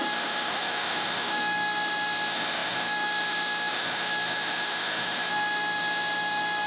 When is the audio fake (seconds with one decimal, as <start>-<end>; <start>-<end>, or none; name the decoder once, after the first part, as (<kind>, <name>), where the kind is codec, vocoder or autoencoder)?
0.0-6.7 (autoencoder, DAC-VAE)